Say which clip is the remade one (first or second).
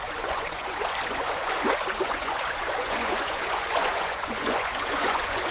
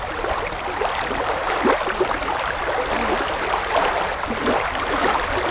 first